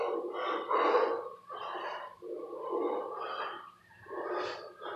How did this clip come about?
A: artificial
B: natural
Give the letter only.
B